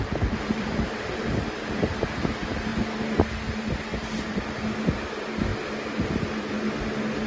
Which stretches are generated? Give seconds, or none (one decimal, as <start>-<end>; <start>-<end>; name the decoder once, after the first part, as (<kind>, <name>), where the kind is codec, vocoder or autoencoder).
0.0-2.7 (vocoder, BigVGAN v2); 5.0-5.5